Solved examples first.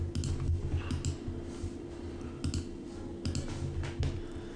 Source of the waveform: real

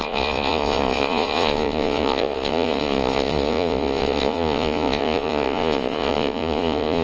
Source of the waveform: fake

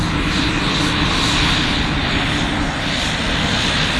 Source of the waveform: real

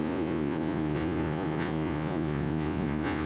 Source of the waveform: fake